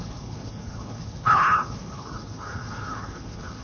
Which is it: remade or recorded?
remade